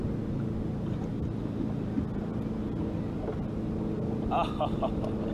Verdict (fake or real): real